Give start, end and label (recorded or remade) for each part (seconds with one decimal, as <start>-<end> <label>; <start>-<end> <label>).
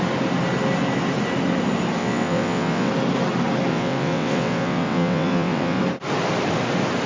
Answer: 0.0-2.0 recorded; 2.0-2.9 remade; 2.9-3.7 recorded; 3.7-5.8 remade; 5.8-7.1 recorded